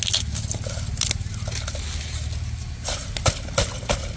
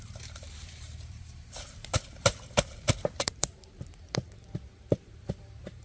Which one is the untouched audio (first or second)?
first